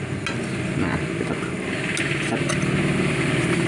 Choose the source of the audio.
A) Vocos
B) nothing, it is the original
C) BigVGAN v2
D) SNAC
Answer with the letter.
B